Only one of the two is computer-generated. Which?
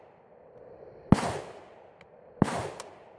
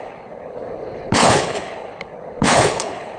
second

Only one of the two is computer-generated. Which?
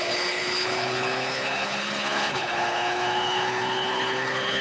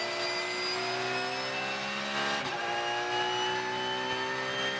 first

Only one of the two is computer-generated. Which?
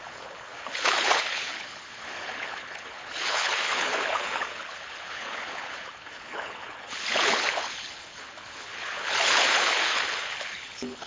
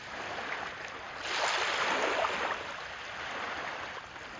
first